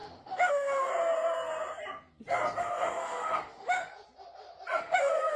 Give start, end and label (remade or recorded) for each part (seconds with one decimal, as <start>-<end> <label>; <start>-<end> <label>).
0.0-0.9 remade; 0.9-2.6 recorded; 2.6-3.9 remade; 3.9-4.8 recorded; 4.8-5.4 remade